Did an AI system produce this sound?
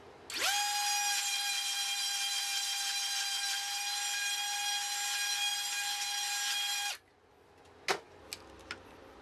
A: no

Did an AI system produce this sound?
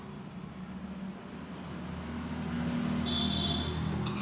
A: no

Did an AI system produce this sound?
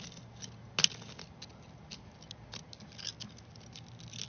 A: no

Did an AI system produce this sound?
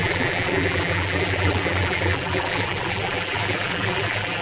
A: yes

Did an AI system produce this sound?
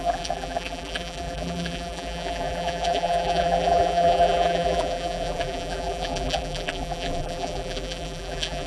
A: yes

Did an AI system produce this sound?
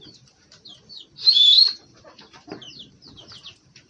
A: yes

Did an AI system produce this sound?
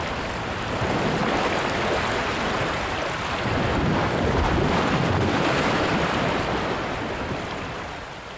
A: no